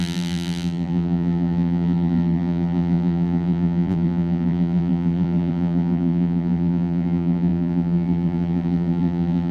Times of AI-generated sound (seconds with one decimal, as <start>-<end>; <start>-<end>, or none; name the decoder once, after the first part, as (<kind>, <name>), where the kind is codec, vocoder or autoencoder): 0.0-9.5 (vocoder, BigVGAN v2)